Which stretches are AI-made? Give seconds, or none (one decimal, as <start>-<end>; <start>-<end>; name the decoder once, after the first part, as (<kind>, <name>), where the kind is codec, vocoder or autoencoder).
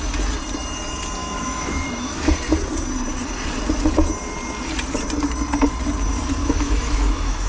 1.2-2.2 (autoencoder, DAC-VAE); 6.4-7.5